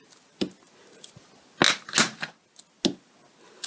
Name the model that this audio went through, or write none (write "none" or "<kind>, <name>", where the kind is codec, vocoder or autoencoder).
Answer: none